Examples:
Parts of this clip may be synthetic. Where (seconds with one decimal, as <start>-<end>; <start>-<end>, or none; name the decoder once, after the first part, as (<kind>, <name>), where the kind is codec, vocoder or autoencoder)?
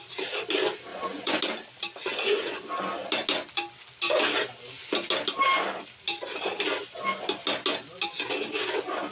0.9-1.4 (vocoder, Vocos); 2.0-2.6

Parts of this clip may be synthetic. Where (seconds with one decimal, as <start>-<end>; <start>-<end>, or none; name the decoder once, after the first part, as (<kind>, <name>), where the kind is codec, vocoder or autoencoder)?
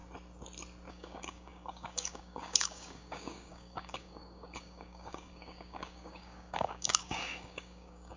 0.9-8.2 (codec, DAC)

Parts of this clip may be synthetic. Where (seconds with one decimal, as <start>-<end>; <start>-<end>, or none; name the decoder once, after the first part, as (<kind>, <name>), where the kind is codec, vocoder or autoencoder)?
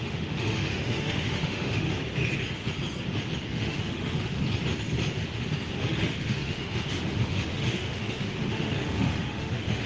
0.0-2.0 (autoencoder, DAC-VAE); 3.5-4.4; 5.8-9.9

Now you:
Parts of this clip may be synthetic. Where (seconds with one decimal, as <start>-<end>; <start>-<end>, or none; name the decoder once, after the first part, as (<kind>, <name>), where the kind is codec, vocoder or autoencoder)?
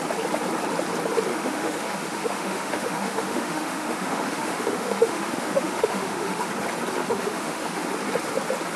1.3-6.5 (autoencoder, DAC-VAE); 7.0-7.8